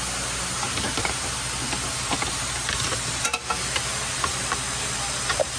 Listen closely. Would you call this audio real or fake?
real